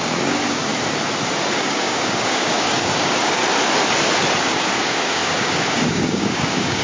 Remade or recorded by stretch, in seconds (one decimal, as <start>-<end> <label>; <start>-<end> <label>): 0.0-0.7 remade; 0.7-1.5 recorded; 1.5-3.4 remade; 3.4-4.4 recorded; 4.4-6.8 remade